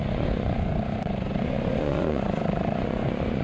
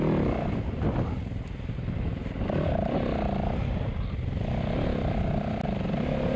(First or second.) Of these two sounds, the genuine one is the second